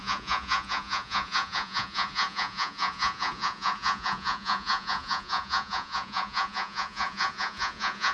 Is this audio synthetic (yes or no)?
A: yes